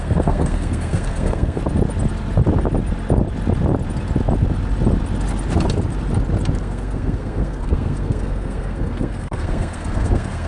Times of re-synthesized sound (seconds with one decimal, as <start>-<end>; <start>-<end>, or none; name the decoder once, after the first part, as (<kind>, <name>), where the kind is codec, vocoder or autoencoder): 0.0-1.6 (codec, SNAC); 6.6-10.5